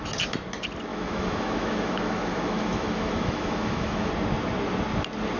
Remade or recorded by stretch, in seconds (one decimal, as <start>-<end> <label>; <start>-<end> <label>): 0.0-0.9 recorded; 0.9-4.1 remade; 4.1-5.4 recorded